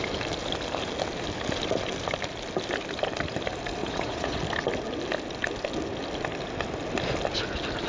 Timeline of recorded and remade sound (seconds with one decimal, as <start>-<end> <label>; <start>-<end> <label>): 0.0-3.8 recorded; 3.8-4.4 remade; 4.4-7.9 recorded